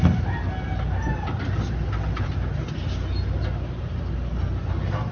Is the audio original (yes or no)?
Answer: yes